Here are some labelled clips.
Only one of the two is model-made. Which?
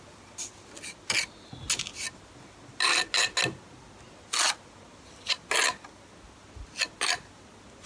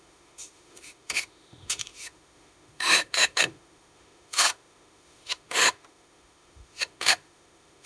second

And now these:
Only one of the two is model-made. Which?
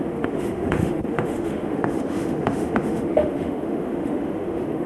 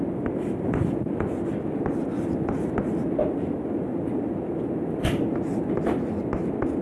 first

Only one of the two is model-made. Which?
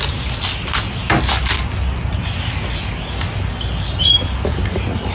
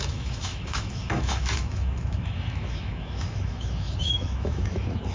second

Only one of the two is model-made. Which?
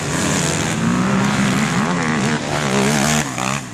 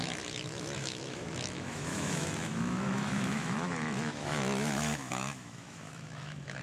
second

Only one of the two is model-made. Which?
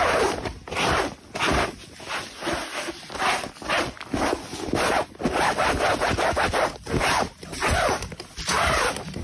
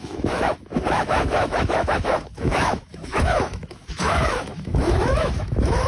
second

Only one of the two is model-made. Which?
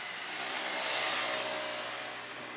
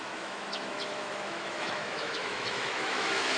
second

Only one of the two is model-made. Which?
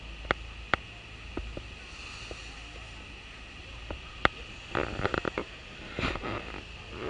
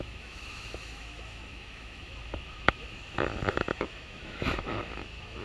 second